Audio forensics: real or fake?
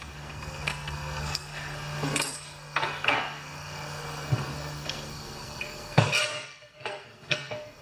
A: fake